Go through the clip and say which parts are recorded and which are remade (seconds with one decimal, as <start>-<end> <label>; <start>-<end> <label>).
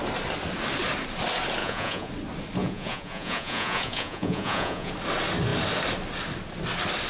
0.0-1.6 recorded; 1.6-2.1 remade; 2.1-2.6 recorded; 2.6-4.9 remade; 4.9-7.1 recorded